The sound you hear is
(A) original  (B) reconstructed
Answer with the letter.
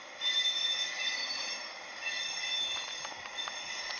A